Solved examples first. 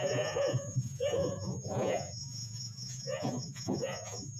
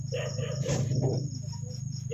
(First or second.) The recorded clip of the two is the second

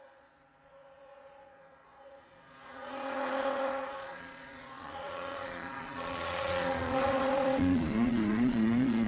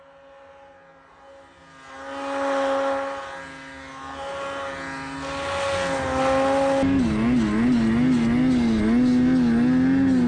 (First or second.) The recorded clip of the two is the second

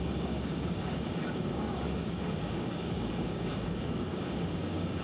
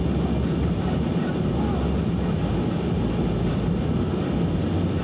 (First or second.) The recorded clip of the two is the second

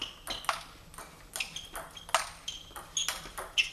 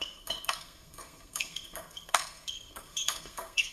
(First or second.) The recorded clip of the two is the first